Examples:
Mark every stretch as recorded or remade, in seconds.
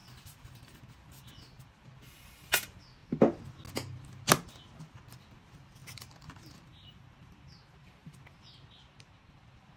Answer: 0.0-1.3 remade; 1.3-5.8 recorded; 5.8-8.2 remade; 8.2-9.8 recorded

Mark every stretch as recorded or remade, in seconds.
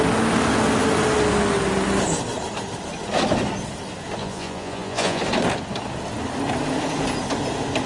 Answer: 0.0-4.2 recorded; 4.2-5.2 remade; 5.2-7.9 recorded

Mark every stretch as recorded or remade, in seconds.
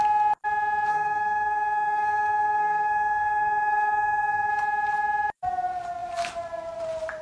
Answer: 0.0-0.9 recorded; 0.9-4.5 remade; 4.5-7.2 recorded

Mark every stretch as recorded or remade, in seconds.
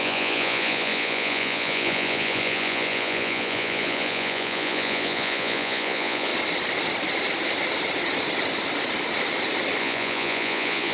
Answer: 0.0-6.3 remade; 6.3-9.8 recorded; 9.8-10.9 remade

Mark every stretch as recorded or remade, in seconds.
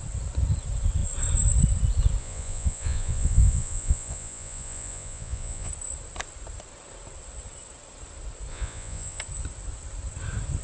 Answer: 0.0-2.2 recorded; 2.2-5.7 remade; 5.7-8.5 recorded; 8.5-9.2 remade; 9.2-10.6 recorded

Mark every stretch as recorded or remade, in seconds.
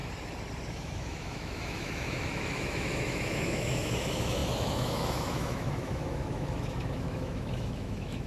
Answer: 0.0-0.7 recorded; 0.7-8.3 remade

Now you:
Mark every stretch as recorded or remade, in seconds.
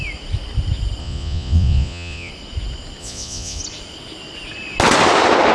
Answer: 0.0-1.0 recorded; 1.0-2.3 remade; 2.3-3.0 recorded; 3.0-3.6 remade; 3.6-5.5 recorded